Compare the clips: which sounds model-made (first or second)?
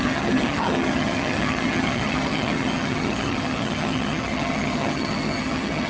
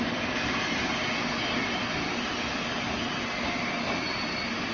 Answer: first